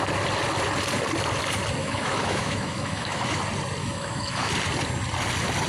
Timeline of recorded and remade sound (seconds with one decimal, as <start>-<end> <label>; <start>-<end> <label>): 0.0-1.8 recorded; 1.8-3.4 remade; 3.4-3.8 recorded; 3.8-4.5 remade; 4.5-5.7 recorded

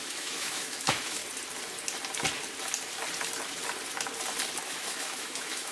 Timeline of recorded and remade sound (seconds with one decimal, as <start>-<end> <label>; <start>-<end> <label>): 0.0-1.2 remade; 1.2-4.6 recorded; 4.6-5.7 remade

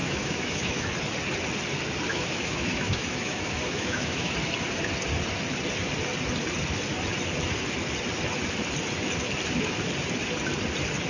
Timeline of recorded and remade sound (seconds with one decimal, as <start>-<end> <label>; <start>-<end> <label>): 0.0-0.9 remade; 0.9-2.1 recorded; 2.1-4.3 remade; 4.3-11.1 recorded

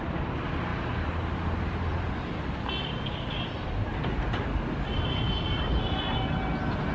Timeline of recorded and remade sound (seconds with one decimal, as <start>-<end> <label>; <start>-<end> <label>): 0.0-6.9 recorded

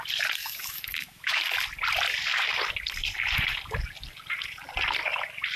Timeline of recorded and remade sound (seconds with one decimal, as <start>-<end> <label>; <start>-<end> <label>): 0.0-0.4 recorded; 0.4-1.4 remade; 1.4-5.6 recorded